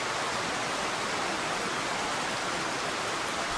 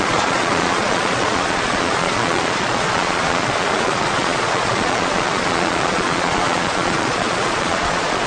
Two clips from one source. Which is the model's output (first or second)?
second